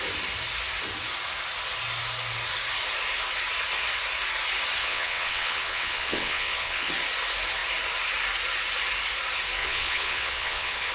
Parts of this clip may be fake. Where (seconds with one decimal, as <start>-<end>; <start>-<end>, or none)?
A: 4.8-6.9; 9.6-10.9

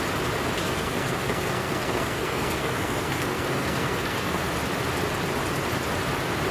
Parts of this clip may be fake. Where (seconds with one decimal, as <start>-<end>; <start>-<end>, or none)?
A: 0.6-4.5

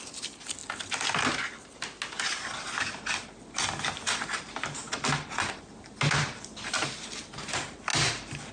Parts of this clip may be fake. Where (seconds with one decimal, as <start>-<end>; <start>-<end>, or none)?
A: none

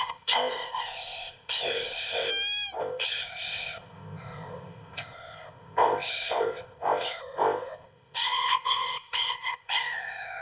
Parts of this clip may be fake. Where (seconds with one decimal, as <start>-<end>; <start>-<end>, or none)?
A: 0.0-2.3; 2.8-10.4

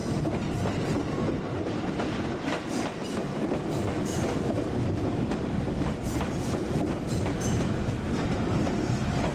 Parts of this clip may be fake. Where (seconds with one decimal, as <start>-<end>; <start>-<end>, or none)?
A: none

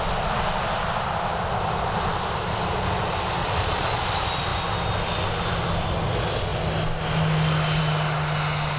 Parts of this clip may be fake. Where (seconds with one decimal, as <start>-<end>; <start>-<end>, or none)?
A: 3.4-4.1